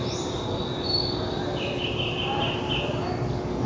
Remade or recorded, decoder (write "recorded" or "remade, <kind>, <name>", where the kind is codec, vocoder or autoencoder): recorded